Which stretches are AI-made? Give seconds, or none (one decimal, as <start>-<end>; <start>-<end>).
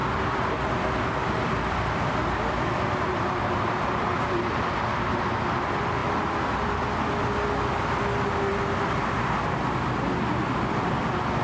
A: 0.0-4.1